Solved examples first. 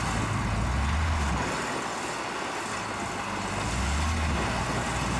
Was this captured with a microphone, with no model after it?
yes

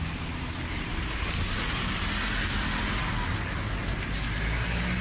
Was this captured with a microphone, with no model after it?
yes